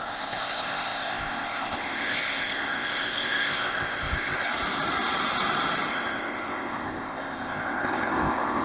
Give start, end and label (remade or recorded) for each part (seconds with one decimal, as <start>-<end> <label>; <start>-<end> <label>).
0.0-4.5 remade; 4.5-5.9 recorded; 5.9-8.6 remade